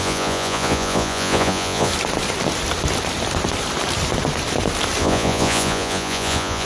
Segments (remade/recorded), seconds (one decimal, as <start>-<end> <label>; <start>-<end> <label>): 0.0-1.9 remade; 1.9-5.0 recorded; 5.0-6.7 remade